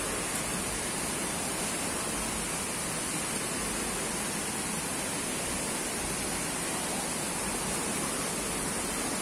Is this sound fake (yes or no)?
no